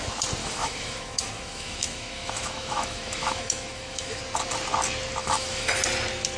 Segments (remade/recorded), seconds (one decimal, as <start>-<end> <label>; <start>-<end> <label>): 0.0-0.4 recorded; 0.4-4.2 remade; 4.2-5.2 recorded; 5.2-5.8 remade; 5.8-6.4 recorded